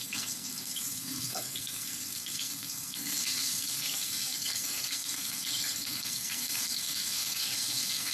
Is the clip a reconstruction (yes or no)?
yes